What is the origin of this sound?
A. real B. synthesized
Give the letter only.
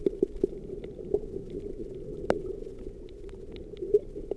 B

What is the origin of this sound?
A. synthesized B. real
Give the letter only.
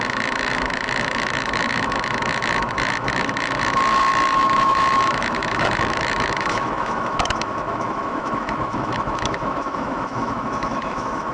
A